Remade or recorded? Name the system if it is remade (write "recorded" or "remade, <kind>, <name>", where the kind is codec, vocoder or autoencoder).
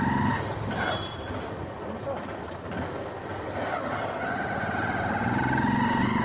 recorded